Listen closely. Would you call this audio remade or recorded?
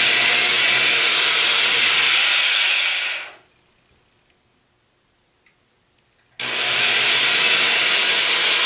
recorded